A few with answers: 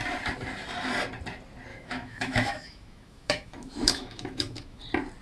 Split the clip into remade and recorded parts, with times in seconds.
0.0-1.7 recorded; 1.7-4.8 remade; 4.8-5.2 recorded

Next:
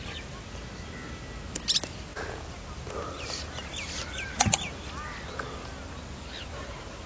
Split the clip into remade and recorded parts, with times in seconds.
0.0-7.1 recorded

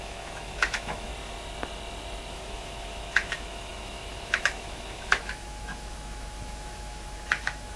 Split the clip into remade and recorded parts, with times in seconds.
0.0-1.1 remade; 1.1-2.3 recorded; 2.3-7.8 remade

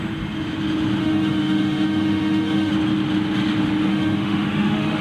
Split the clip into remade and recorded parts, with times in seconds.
0.0-1.0 recorded; 1.0-2.7 remade; 2.7-3.9 recorded; 3.9-5.0 remade